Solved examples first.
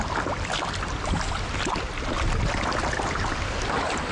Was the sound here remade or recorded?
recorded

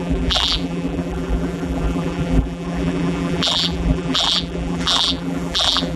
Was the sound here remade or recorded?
remade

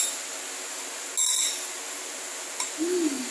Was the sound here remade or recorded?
recorded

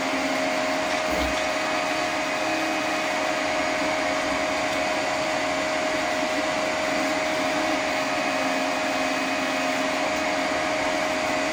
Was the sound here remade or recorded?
recorded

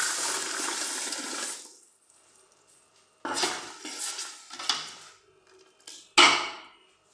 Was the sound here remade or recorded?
recorded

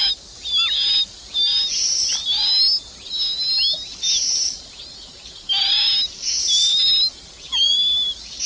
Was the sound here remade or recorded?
recorded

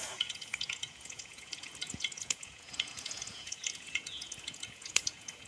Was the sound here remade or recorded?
remade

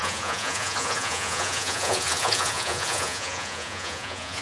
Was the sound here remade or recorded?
remade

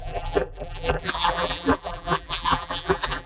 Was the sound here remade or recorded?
remade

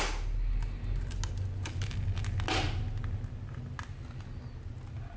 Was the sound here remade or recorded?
recorded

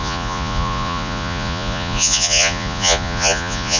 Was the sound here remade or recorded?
remade